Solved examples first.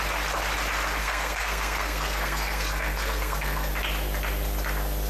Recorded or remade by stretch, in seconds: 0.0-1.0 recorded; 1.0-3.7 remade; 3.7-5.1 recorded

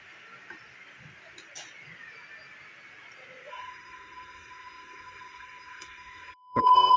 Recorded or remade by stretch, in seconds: 0.0-3.5 recorded; 3.5-7.0 remade

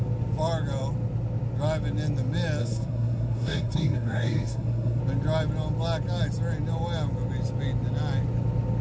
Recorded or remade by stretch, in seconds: 0.0-2.6 recorded; 2.6-5.0 remade; 5.0-8.8 recorded

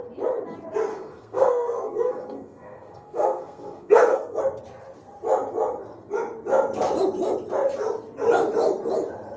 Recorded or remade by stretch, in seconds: 0.0-0.9 recorded; 0.9-4.4 remade; 4.4-9.4 recorded

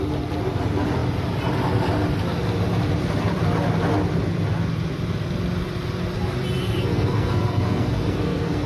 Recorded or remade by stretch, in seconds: 0.0-6.6 recorded; 6.6-8.7 remade

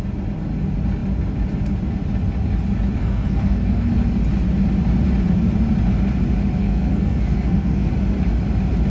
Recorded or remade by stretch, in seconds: 0.0-3.0 recorded; 3.0-3.9 remade; 3.9-6.6 recorded; 6.6-7.9 remade; 7.9-8.9 recorded